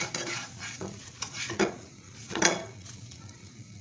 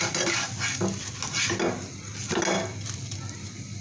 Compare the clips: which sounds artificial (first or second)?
first